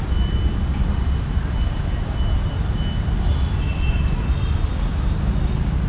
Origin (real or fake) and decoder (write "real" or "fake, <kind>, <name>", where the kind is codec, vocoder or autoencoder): real